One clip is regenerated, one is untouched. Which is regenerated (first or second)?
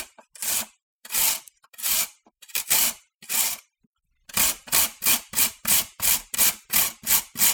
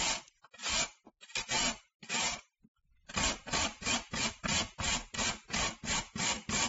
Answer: first